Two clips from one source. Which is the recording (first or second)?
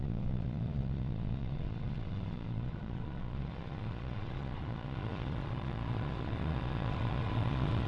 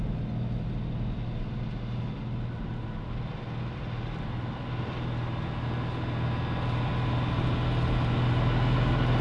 second